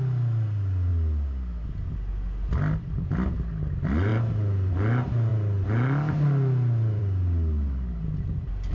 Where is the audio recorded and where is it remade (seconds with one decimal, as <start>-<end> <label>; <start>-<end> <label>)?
0.0-8.7 recorded